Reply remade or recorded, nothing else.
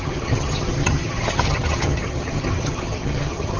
remade